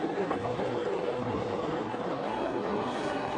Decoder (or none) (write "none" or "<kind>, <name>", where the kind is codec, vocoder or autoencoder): codec, SNAC